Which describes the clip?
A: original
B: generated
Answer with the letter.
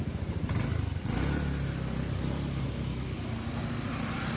A